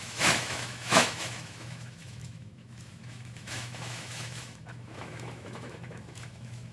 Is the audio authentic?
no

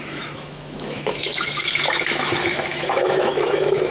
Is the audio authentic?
no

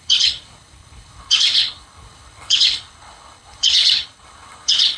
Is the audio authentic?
no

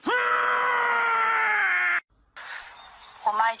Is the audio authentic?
yes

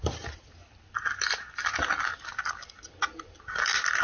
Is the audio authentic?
yes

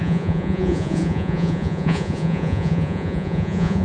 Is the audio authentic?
no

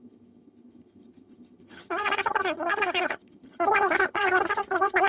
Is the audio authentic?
no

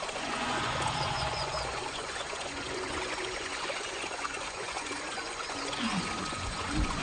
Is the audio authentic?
no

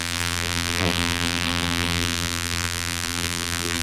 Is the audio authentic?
no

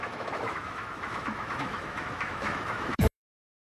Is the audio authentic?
no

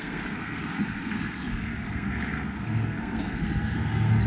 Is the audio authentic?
no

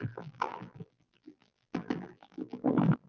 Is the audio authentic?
no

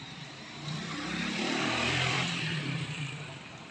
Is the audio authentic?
no